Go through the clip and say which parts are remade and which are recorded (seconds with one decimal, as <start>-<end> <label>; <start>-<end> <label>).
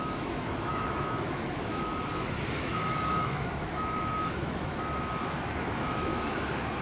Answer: 0.0-6.8 remade